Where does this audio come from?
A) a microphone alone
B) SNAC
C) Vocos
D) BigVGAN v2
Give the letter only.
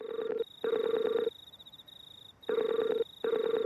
A